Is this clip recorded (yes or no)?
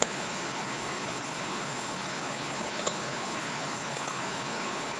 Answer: no